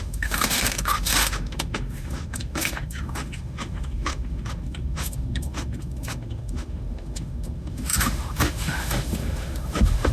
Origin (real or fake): fake